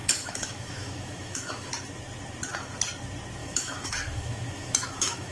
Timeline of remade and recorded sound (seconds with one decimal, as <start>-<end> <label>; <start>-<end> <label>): 0.0-1.7 remade; 1.7-3.4 recorded; 3.4-5.3 remade